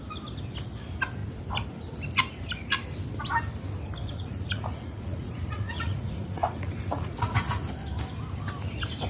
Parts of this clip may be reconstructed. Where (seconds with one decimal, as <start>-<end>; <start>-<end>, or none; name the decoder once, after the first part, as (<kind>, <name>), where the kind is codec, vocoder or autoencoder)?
4.0-7.4 (vocoder, Vocos)